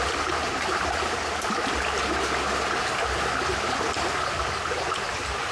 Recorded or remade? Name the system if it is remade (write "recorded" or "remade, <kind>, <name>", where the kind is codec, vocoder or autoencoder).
recorded